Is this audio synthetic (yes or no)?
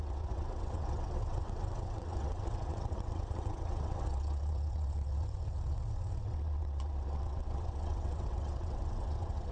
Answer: yes